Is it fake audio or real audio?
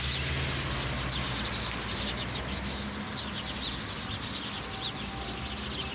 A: real